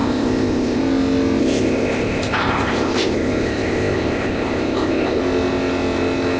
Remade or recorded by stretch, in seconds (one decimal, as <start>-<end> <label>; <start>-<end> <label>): 0.0-0.8 remade; 0.8-1.4 recorded; 1.4-5.2 remade; 5.2-6.4 recorded